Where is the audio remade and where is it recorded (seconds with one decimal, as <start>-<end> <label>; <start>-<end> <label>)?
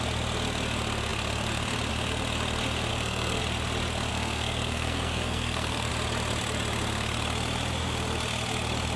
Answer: 0.0-2.9 recorded; 2.9-3.4 remade; 3.4-4.1 recorded; 4.1-5.9 remade; 5.9-9.0 recorded